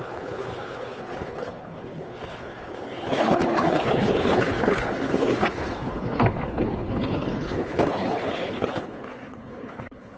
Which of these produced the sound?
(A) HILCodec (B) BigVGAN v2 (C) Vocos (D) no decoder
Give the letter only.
A